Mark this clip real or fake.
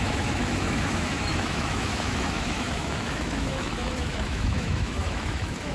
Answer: fake